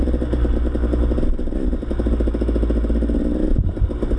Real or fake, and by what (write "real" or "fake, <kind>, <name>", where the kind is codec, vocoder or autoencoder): real